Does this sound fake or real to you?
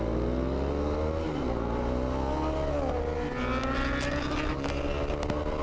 real